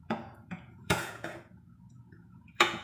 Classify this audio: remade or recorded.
remade